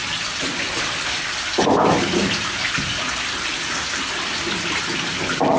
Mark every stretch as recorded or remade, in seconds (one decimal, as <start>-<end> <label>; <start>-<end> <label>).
0.0-5.6 recorded